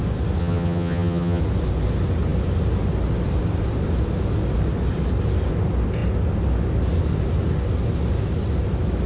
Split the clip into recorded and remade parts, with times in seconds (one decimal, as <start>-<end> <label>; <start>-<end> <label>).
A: 0.0-0.4 recorded; 0.4-1.4 remade; 1.4-9.1 recorded